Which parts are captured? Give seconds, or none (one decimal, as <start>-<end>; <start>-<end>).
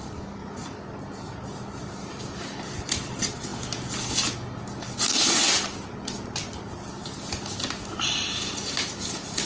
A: 0.0-9.5